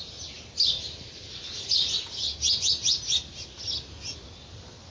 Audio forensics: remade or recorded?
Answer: recorded